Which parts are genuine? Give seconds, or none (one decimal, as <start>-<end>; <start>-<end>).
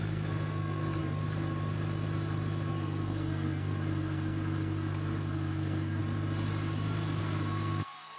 1.0-2.7; 6.0-7.2